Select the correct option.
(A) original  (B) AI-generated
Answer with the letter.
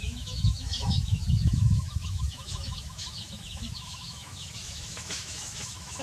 B